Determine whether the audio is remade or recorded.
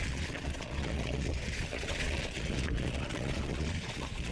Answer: remade